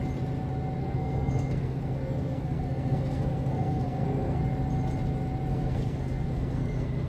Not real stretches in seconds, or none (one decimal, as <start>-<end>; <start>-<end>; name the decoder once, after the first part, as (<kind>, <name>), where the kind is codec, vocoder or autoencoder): 0.8-4.4 (codec, SNAC); 5.5-7.1